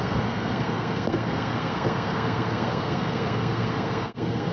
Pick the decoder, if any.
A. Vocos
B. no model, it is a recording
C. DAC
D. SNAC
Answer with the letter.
D